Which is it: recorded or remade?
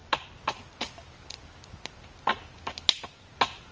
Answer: recorded